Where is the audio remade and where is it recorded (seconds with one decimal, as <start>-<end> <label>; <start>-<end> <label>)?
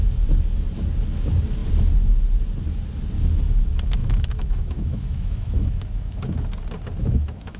0.0-4.0 recorded; 4.0-6.4 remade; 6.4-7.0 recorded; 7.0-7.6 remade